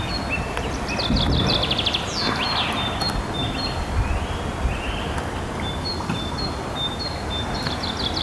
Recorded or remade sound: recorded